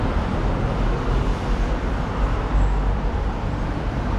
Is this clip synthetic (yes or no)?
yes